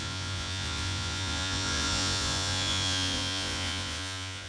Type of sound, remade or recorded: remade